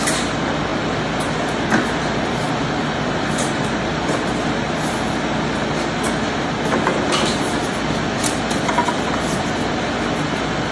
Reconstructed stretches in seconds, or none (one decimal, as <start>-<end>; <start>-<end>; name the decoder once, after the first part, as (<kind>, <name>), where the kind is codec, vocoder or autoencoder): 8.8-9.7 (vocoder, BigVGAN v2)

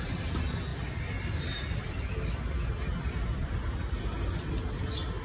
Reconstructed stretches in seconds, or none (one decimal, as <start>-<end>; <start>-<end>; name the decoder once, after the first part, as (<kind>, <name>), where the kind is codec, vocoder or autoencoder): none

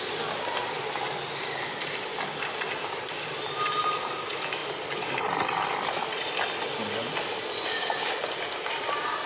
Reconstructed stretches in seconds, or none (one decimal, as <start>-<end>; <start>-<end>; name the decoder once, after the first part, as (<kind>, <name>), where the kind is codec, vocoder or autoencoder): none

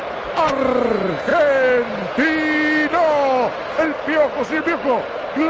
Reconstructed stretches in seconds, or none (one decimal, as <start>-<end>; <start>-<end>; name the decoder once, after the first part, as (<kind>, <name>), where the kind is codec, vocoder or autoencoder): none